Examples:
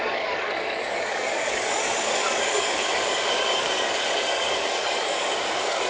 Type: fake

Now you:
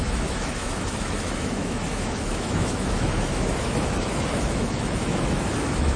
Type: fake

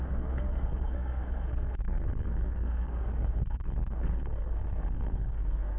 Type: fake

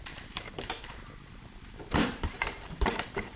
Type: fake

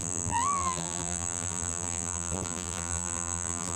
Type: fake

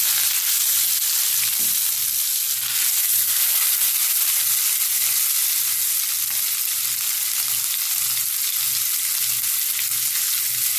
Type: real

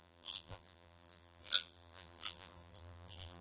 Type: fake